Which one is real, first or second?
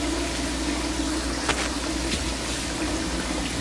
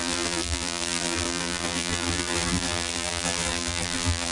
first